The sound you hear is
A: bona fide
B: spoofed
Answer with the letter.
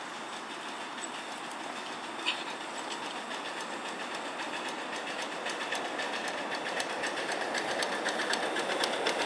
A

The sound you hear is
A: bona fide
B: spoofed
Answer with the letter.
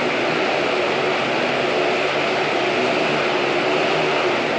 A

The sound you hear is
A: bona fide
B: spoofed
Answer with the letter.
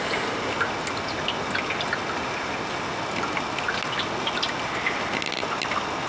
A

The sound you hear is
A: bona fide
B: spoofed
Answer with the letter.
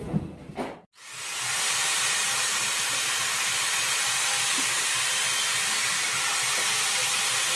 A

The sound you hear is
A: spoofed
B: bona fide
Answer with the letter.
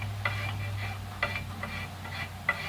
B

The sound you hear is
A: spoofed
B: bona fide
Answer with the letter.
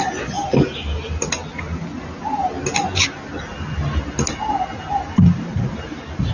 B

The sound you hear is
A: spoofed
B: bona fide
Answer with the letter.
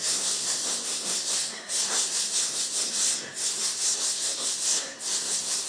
A